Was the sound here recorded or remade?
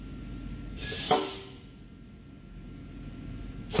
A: recorded